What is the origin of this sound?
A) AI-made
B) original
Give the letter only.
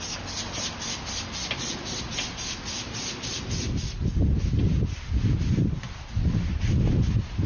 B